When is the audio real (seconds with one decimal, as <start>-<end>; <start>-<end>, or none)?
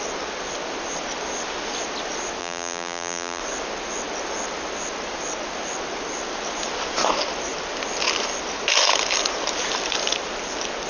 0.0-2.4; 3.4-10.9